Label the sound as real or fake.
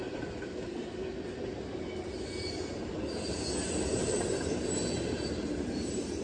real